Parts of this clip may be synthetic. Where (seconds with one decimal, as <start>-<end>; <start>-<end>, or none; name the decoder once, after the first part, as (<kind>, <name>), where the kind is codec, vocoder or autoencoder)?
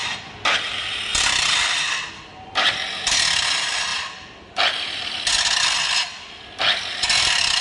0.0-0.7 (vocoder, BigVGAN v2); 1.1-1.8; 3.9-5.3